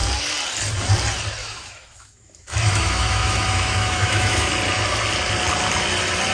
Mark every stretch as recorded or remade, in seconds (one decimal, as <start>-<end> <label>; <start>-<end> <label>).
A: 0.0-1.4 recorded; 1.4-4.5 remade; 4.5-6.3 recorded